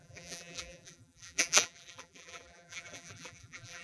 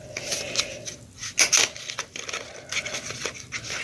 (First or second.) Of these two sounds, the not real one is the first